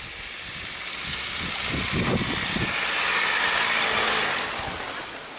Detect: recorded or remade recorded